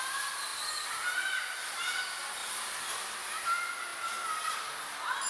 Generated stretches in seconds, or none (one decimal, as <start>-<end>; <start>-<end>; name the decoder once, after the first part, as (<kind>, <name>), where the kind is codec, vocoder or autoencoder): 2.4-2.9 (vocoder, BigVGAN v2); 3.9-4.7